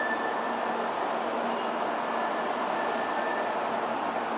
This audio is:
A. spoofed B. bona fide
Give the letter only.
B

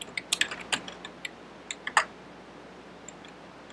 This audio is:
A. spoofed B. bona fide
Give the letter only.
B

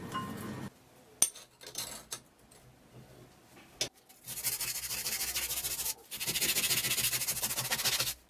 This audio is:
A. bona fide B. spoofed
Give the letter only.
A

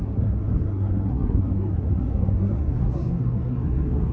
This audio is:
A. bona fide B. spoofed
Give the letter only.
B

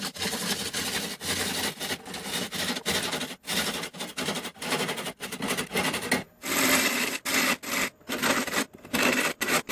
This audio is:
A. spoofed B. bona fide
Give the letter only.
B